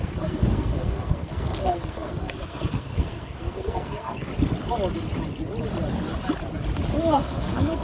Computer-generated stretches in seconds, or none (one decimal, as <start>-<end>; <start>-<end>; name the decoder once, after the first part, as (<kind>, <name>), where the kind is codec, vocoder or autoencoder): 0.0-4.3 (codec, SNAC); 7.0-7.8